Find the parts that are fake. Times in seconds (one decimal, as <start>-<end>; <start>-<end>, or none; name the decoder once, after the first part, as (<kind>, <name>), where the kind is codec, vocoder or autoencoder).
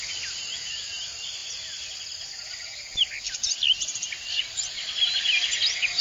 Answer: none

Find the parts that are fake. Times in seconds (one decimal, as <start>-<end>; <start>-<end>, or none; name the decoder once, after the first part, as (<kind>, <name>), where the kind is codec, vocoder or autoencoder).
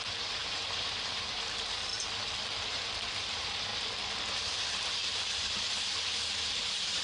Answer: 0.0-1.9 (vocoder, BigVGAN v2); 2.6-3.7; 4.4-5.0; 5.6-7.0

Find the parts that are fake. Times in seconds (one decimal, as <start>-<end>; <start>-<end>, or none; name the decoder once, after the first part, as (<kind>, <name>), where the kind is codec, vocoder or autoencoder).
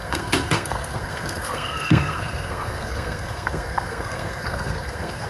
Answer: 0.0-5.3 (codec, SNAC)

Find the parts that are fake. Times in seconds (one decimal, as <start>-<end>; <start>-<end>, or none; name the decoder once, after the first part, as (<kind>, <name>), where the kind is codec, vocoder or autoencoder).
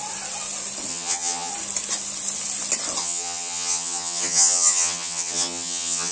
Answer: 0.9-1.5 (vocoder, HiFi-GAN); 3.0-6.1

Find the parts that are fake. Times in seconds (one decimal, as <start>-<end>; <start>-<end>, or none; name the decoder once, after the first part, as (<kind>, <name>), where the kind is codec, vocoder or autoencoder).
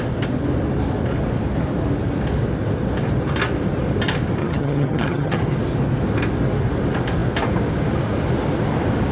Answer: 4.4-5.4 (vocoder, HiFi-GAN)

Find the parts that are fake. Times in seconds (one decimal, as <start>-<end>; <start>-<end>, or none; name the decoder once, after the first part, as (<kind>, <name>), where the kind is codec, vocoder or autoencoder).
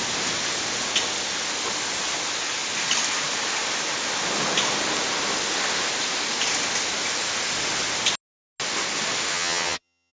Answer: 9.3-10.1 (vocoder, HiFi-GAN)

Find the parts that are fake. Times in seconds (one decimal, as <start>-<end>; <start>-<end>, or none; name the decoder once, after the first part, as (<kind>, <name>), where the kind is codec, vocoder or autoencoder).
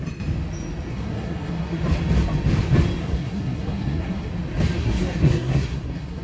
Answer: 0.9-1.8 (codec, SNAC); 3.0-4.3; 4.8-6.2